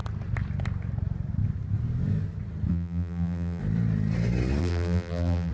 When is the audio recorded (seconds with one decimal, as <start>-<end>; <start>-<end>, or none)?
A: 0.0-2.7; 3.6-4.6